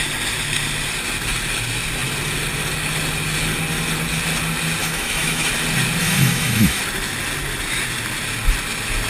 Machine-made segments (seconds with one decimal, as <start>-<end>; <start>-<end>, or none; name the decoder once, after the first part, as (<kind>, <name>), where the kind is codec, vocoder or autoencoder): 4.8-5.5 (autoencoder, DAC-VAE); 6.0-6.8